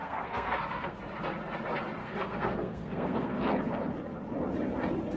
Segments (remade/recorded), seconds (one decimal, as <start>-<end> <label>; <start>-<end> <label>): 0.0-1.0 remade; 1.0-2.0 recorded; 2.0-3.4 remade; 3.4-5.2 recorded